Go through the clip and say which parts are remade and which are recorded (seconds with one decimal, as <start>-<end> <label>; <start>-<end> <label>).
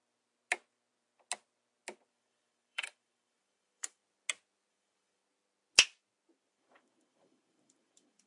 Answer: 0.0-2.1 recorded; 2.1-4.0 remade; 4.0-4.7 recorded; 4.7-5.2 remade; 5.2-6.5 recorded; 6.5-8.3 remade